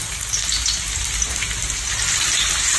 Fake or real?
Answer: real